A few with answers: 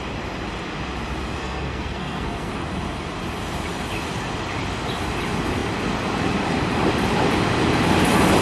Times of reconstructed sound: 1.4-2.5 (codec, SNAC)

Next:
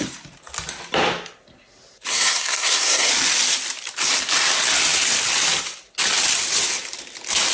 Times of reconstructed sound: 2.1-3.1 (codec, SNAC)

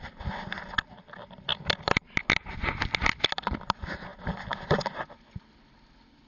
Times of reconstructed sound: none

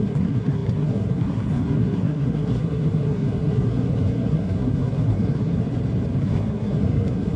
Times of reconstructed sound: 0.0-5.5 (codec, SNAC); 6.2-7.4